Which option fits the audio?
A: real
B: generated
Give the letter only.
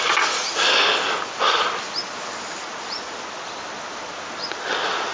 A